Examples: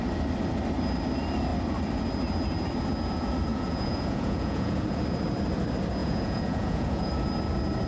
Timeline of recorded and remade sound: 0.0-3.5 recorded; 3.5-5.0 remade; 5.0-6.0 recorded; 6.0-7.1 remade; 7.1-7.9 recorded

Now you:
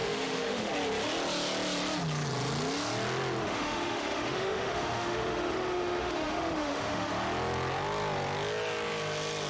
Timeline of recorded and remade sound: 0.0-0.7 remade; 0.7-3.4 recorded; 3.4-7.1 remade; 7.1-9.5 recorded

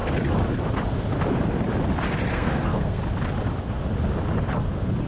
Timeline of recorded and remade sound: 0.0-2.3 recorded; 2.3-3.0 remade; 3.0-5.1 recorded

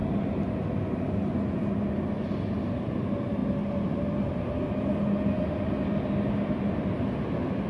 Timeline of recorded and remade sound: 0.0-7.7 recorded

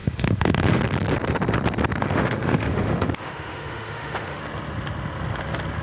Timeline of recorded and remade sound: 0.0-0.8 remade; 0.8-2.0 recorded; 2.0-4.4 remade; 4.4-5.8 recorded

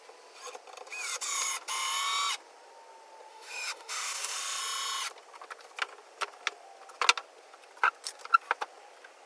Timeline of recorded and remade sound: 0.0-3.3 recorded; 3.3-4.6 remade; 4.6-9.3 recorded

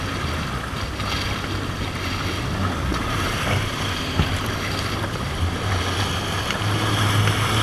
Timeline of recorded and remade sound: 0.0-2.9 recorded; 2.9-5.7 remade; 5.7-7.6 recorded